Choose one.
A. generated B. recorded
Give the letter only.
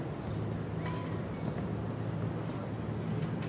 B